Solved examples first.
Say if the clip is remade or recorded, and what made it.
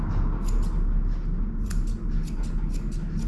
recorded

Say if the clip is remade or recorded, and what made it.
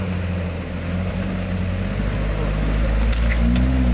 recorded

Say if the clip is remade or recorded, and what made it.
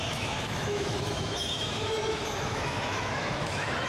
remade, autoencoder, DAC-VAE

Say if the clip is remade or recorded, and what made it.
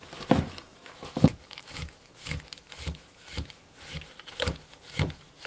remade, autoencoder, DAC-VAE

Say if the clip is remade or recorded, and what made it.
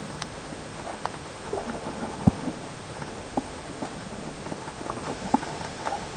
remade, autoencoder, DAC-VAE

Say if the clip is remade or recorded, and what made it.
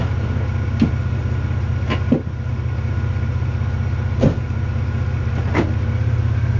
recorded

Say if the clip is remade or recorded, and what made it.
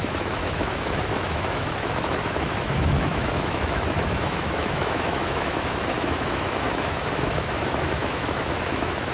remade, autoencoder, DAC-VAE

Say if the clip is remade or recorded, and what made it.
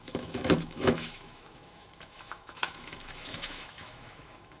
remade, autoencoder, DAC-VAE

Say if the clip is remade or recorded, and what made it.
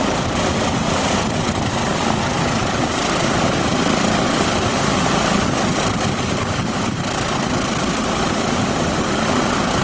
recorded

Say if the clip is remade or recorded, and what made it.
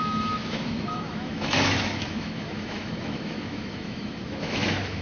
remade, autoencoder, DAC-VAE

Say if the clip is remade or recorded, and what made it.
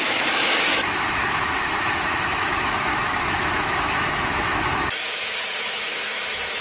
remade, autoencoder, DAC-VAE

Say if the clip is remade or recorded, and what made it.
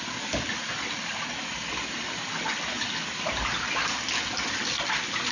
recorded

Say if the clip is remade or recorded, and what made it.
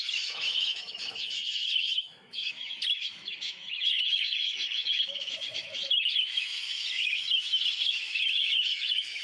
remade, autoencoder, DAC-VAE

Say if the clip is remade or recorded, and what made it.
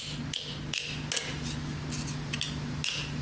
recorded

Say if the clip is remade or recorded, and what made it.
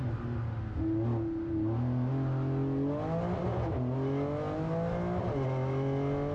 recorded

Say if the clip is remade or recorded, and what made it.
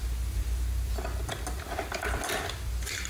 recorded